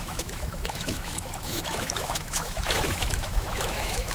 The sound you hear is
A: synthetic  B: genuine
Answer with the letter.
A